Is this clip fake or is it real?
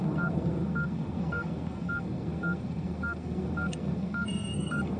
fake